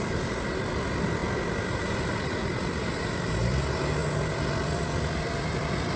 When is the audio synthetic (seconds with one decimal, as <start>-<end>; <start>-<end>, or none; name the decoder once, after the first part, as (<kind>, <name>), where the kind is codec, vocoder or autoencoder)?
none